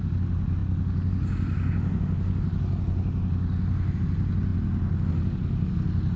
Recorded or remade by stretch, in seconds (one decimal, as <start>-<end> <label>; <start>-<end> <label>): 0.0-6.2 recorded